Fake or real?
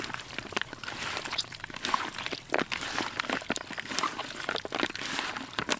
real